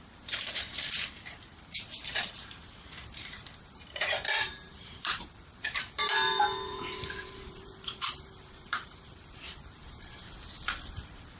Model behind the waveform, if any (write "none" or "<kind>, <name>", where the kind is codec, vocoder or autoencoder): vocoder, BigVGAN v2